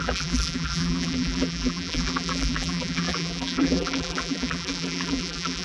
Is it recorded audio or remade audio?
remade